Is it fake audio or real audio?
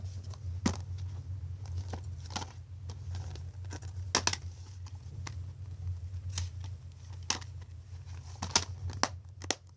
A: real